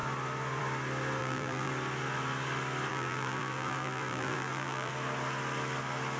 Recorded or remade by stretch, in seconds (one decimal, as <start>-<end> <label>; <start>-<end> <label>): 0.0-1.2 recorded; 1.2-1.7 remade; 1.7-2.9 recorded; 2.9-4.9 remade; 4.9-6.2 recorded